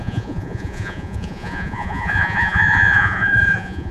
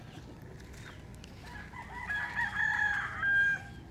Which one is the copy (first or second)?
first